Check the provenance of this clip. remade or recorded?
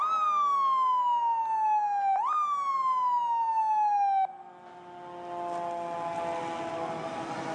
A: recorded